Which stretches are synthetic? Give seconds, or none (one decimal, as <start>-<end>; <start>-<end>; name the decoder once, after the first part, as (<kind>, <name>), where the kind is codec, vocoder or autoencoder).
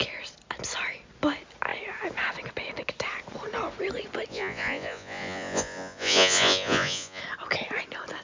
4.3-7.2 (vocoder, Vocos)